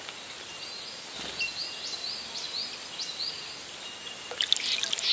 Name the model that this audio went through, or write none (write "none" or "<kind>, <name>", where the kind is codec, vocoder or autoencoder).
none